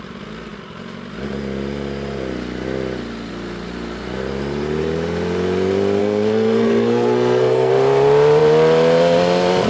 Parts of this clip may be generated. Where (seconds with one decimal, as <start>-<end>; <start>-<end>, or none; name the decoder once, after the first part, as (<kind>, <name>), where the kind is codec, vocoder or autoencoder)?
6.0-7.7 (codec, SNAC)